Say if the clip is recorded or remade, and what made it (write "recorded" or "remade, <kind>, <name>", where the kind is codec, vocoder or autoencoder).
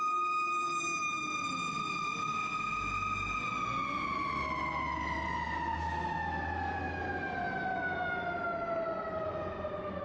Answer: recorded